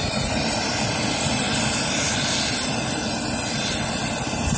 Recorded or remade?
recorded